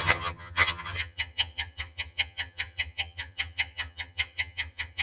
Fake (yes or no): yes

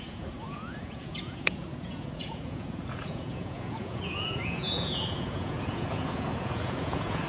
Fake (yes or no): yes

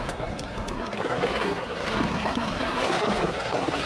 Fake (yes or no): yes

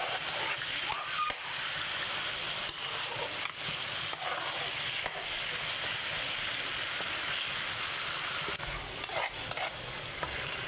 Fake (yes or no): no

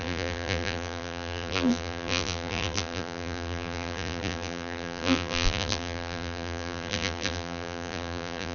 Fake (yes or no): yes